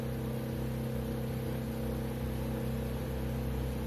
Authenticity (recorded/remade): recorded